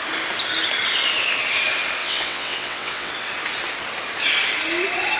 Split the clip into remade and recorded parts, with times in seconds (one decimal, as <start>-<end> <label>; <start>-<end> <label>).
0.0-2.0 recorded; 2.0-3.1 remade; 3.1-5.2 recorded